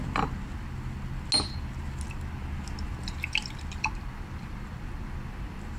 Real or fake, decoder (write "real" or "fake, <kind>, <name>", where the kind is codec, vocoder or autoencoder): real